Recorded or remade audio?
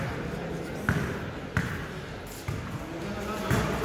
recorded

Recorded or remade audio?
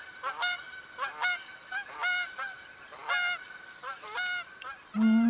recorded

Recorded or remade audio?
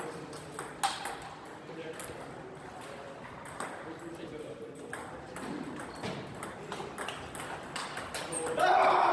recorded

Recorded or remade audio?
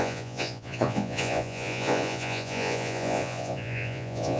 remade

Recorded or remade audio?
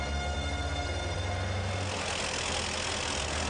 recorded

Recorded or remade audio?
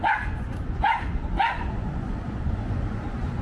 remade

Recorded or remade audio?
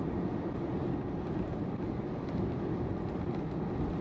recorded